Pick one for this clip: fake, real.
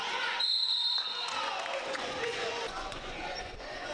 fake